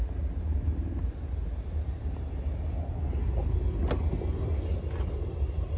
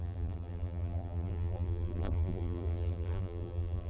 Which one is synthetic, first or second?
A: second